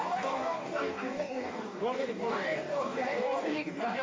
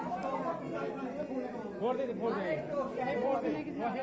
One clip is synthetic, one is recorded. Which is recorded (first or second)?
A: second